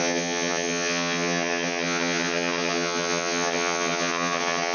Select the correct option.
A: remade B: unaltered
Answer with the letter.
A